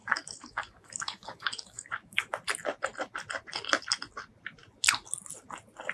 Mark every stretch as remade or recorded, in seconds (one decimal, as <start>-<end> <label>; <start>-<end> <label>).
0.0-2.3 remade; 2.3-5.9 recorded